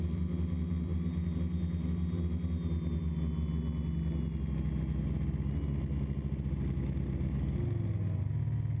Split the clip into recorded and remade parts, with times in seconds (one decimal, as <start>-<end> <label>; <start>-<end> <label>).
0.0-8.8 recorded